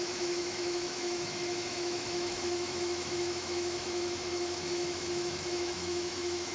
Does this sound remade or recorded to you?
remade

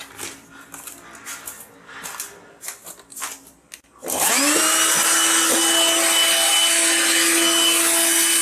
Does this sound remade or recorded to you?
recorded